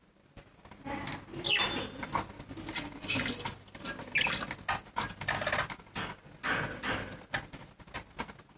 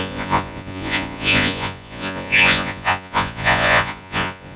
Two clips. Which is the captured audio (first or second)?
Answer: first